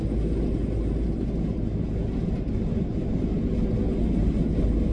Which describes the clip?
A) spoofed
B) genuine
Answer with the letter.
B